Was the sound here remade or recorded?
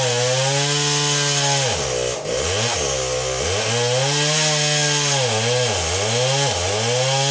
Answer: recorded